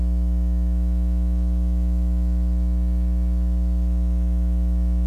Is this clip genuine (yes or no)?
no